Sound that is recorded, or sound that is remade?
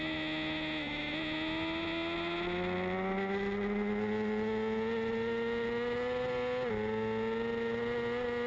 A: recorded